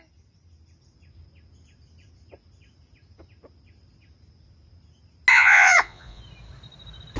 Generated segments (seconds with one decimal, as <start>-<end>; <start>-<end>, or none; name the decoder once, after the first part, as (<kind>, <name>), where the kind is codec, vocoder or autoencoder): 5.3-6.2 (vocoder, Vocos)

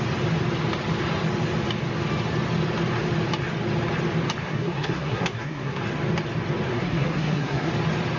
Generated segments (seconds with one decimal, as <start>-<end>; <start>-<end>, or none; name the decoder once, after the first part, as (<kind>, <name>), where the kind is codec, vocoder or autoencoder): 4.4-5.8 (codec, SNAC); 6.7-7.7

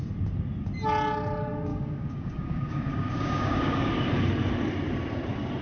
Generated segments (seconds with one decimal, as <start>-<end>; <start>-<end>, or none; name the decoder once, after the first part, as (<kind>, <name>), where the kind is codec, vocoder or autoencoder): 1.7-3.9 (codec, DAC)

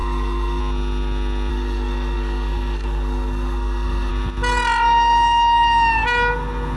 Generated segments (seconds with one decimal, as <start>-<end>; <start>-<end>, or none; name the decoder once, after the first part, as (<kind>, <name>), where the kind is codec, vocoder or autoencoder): 0.0-0.6 (codec, SNAC); 1.5-4.1

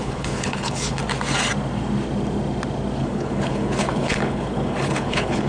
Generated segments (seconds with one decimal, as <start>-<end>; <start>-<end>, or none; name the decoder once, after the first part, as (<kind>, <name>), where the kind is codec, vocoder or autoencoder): 0.0-1.0 (codec, HILCodec); 3.0-5.5

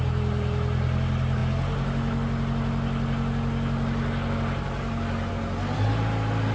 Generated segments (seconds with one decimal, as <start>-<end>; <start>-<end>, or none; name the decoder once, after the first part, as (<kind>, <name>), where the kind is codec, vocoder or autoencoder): none